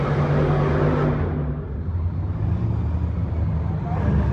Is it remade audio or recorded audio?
recorded